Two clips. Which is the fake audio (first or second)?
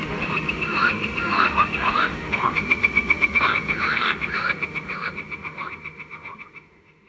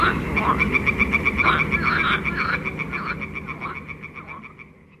first